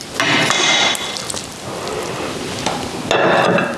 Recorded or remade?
recorded